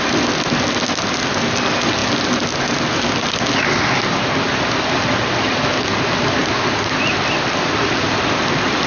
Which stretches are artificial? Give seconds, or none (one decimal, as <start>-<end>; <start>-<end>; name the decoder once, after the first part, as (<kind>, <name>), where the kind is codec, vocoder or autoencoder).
none

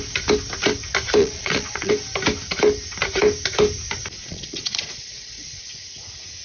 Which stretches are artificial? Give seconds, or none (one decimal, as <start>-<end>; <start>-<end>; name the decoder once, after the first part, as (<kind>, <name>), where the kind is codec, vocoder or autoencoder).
1.2-1.9 (vocoder, Vocos); 4.2-5.6

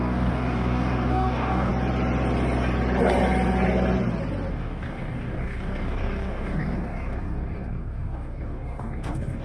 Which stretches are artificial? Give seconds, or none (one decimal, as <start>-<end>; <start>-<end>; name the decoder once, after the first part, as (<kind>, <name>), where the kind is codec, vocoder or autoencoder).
0.0-1.7 (codec, DAC); 4.5-9.4

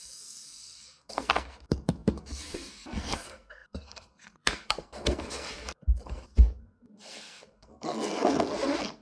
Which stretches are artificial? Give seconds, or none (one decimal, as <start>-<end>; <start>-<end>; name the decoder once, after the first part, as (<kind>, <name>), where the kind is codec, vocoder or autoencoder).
0.0-9.0 (codec, SNAC)

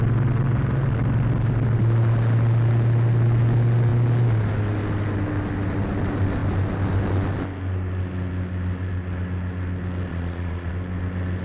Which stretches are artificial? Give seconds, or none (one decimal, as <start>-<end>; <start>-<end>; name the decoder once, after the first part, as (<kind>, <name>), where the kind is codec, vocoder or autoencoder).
10.1-10.7 (vocoder, Vocos)